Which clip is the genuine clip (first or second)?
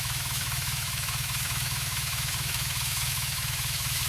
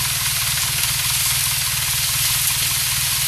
second